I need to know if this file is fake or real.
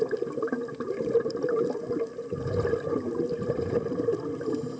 real